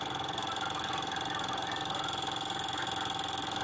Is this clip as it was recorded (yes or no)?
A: yes